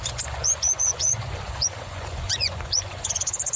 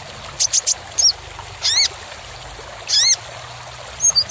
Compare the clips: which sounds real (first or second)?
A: second